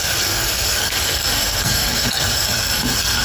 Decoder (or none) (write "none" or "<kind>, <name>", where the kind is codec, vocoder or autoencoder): codec, SNAC